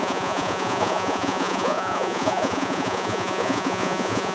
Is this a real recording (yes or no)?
no